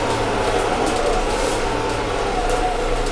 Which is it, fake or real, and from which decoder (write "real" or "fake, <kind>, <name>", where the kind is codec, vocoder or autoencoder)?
real